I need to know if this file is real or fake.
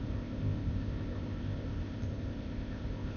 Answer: fake